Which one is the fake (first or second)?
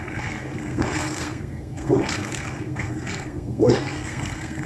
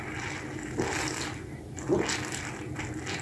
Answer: first